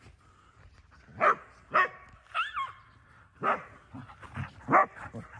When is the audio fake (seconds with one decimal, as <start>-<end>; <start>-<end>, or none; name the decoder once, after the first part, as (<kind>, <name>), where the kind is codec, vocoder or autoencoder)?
none